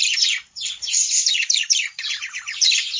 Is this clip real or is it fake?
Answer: fake